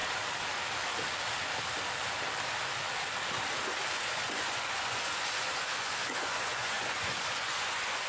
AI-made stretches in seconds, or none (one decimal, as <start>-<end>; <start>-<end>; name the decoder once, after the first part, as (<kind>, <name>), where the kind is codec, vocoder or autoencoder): 3.9-8.1 (vocoder, Vocos)